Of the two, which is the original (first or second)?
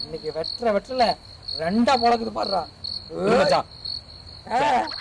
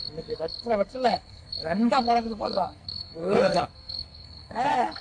first